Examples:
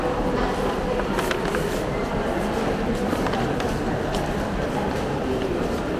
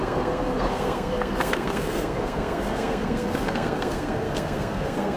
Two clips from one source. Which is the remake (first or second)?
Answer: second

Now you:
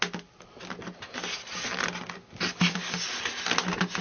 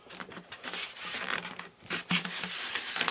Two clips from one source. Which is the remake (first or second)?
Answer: second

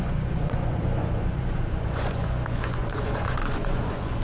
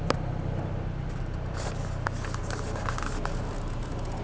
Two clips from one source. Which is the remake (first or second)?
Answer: first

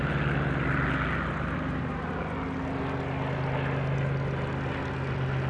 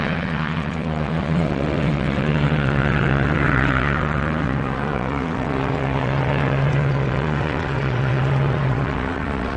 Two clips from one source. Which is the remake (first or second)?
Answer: second